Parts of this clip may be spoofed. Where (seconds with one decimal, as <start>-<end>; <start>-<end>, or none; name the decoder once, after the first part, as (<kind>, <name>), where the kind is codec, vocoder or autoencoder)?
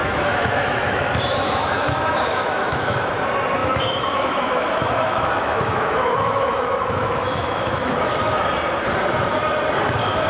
0.0-3.1 (autoencoder, DAC-VAE); 3.6-8.3